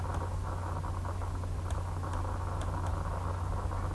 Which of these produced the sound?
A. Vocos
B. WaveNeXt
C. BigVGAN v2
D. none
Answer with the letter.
D